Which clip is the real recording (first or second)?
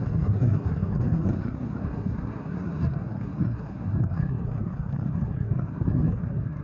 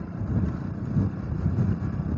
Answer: second